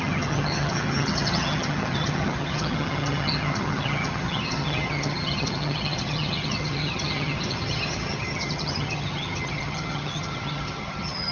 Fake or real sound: fake